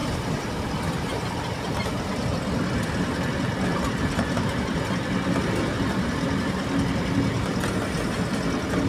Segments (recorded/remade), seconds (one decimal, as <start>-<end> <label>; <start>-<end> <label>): 0.0-1.9 remade; 1.9-3.7 recorded; 3.7-4.9 remade; 4.9-8.9 recorded